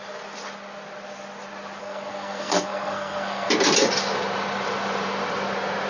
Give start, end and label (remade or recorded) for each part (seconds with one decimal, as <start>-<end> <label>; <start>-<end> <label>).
0.0-1.8 recorded; 1.8-3.5 remade; 3.5-5.9 recorded